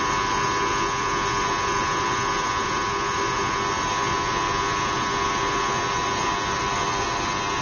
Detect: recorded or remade recorded